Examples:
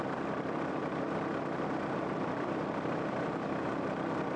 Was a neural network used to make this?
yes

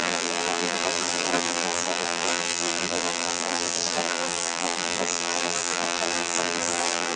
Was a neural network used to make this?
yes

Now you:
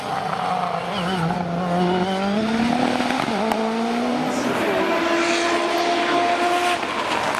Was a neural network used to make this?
no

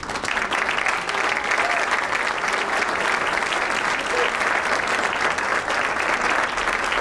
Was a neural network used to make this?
no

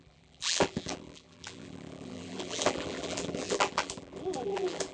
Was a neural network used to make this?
yes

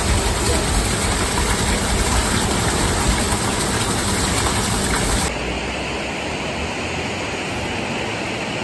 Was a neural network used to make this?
no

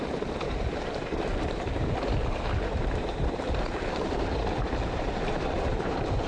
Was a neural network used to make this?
yes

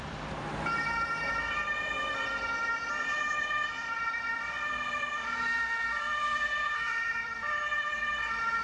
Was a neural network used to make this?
yes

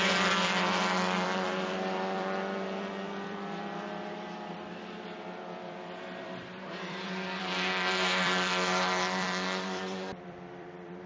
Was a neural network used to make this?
yes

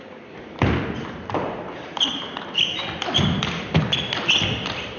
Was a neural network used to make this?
yes